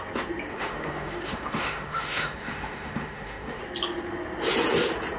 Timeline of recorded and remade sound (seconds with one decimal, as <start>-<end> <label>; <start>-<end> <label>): 0.0-0.5 recorded; 0.5-3.6 remade; 3.6-5.2 recorded